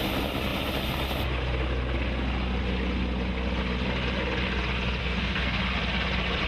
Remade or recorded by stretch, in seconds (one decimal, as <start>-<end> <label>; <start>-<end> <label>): 0.0-5.0 recorded; 5.0-5.6 remade; 5.6-6.5 recorded